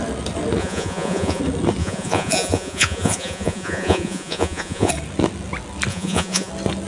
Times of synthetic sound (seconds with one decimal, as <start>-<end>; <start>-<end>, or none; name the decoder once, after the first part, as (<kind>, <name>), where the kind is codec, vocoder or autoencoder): 0.6-1.4 (vocoder, Vocos); 1.8-4.9; 5.9-6.5